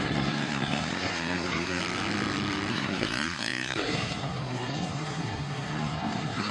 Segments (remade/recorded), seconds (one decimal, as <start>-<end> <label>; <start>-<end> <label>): 0.0-1.8 remade; 1.8-2.7 recorded; 2.7-6.5 remade